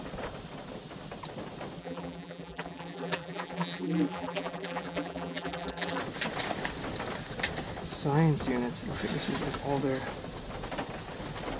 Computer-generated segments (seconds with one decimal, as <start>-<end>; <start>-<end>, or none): 1.8-6.0